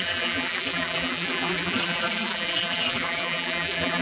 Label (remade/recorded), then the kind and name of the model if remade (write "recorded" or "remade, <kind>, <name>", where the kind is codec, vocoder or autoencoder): remade, vocoder, BigVGAN v2